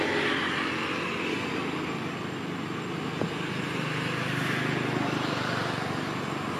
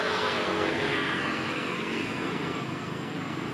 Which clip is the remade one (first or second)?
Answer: second